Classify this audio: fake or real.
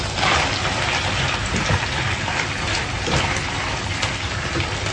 real